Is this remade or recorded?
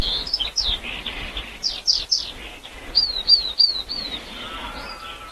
recorded